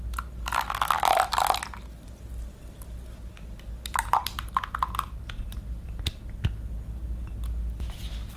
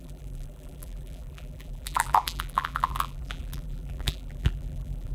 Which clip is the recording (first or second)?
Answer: first